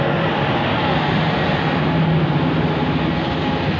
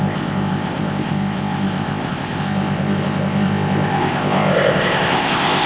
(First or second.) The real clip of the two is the first